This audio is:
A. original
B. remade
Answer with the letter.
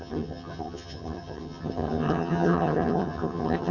B